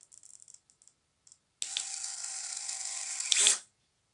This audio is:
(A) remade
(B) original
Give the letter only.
B